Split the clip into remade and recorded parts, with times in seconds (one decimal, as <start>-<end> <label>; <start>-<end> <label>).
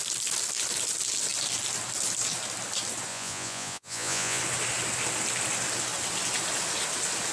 0.0-3.1 recorded; 3.1-4.4 remade; 4.4-7.3 recorded